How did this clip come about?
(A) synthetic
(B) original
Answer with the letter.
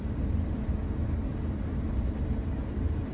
B